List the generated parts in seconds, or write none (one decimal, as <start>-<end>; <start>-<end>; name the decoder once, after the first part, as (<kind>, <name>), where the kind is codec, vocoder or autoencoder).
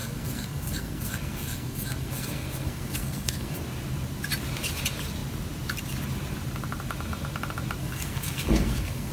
0.0-3.6 (codec, SNAC); 7.8-9.1